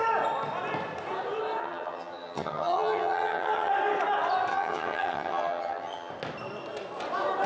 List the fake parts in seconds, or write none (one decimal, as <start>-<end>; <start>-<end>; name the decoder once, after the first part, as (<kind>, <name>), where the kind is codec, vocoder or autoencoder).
1.6-3.7 (vocoder, HiFi-GAN); 4.5-6.1